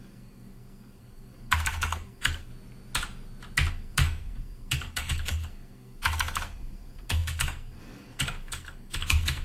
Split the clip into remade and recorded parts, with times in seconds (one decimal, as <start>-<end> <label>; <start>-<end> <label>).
0.0-2.5 remade; 2.5-3.7 recorded; 3.7-9.4 remade